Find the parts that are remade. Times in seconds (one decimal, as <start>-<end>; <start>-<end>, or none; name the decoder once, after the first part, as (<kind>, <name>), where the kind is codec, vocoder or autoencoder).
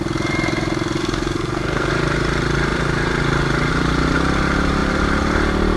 1.0-1.9 (codec, SNAC)